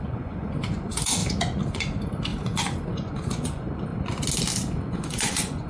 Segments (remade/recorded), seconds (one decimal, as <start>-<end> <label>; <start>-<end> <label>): 0.0-1.2 remade; 1.2-1.7 recorded; 1.7-3.9 remade; 3.9-4.8 recorded; 4.8-5.7 remade